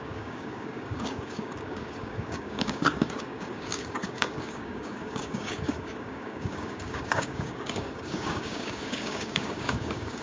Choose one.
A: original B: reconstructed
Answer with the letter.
B